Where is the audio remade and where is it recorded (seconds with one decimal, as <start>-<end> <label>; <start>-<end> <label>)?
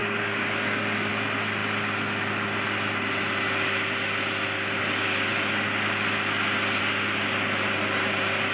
0.0-1.1 remade; 1.1-8.5 recorded